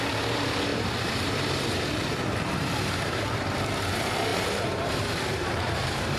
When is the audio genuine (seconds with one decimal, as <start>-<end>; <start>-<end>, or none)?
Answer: none